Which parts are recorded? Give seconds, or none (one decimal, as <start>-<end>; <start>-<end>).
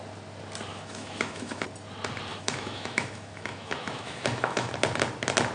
0.0-0.7; 1.6-2.3; 4.7-5.5